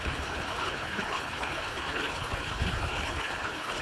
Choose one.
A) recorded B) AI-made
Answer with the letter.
B